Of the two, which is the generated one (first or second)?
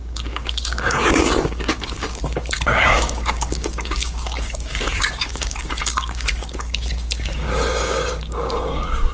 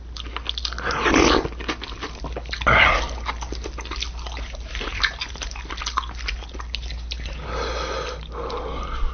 first